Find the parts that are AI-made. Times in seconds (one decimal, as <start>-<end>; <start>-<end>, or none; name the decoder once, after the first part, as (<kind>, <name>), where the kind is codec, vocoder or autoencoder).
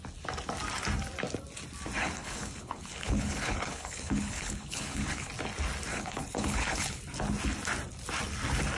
2.0-5.3 (codec, HILCodec); 5.9-7.0